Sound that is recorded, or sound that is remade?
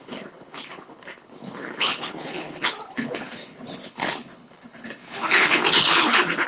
remade